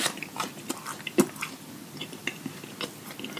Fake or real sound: real